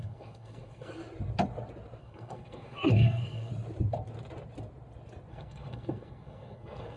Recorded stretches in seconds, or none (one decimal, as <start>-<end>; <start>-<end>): 1.0-2.0; 3.5-5.3